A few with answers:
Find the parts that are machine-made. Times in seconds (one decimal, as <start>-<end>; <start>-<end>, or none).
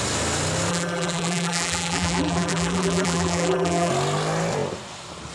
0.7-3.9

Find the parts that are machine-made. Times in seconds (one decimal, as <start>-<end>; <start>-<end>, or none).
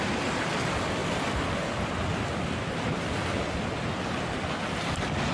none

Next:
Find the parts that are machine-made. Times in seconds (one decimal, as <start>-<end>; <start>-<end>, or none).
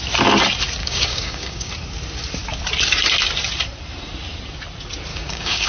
0.8-1.7; 5.1-5.7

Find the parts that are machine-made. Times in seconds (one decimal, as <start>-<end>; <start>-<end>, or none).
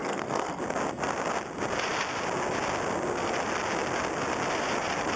0.0-0.6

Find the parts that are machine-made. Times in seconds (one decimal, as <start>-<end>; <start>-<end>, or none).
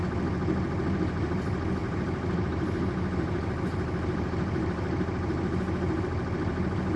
1.8-6.0